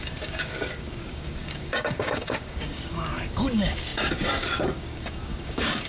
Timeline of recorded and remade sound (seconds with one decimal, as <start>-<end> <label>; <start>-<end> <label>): 0.0-5.9 remade